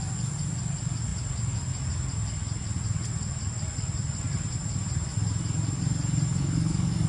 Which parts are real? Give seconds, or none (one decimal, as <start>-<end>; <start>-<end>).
0.0-6.3